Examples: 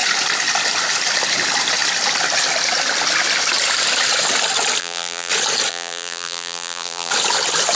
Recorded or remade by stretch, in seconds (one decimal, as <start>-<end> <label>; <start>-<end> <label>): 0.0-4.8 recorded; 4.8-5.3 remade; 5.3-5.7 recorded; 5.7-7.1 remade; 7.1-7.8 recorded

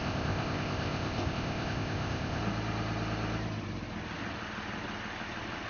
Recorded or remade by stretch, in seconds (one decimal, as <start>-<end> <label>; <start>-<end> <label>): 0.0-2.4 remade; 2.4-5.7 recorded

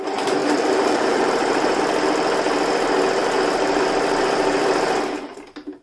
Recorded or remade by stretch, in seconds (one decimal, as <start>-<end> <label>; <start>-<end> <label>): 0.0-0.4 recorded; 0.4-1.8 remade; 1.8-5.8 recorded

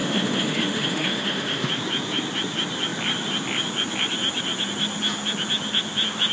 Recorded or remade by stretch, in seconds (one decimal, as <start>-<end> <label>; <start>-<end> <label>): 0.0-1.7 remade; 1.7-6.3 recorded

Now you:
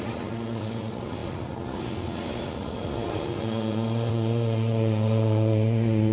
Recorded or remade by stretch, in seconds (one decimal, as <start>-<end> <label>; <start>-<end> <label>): 0.0-6.1 remade

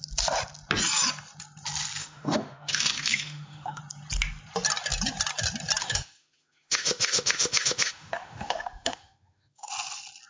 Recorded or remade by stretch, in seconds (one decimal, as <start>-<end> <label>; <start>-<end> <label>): 0.0-2.0 recorded; 2.0-3.8 remade; 3.8-5.8 recorded; 5.8-9.7 remade; 9.7-10.3 recorded

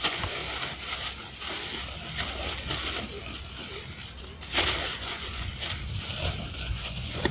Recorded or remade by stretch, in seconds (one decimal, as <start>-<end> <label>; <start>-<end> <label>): 0.0-0.4 remade; 0.4-4.8 recorded; 4.8-5.5 remade; 5.5-6.5 recorded; 6.5-7.3 remade

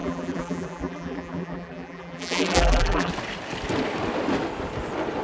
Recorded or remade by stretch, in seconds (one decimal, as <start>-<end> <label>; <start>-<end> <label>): 0.0-3.1 remade; 3.1-5.2 recorded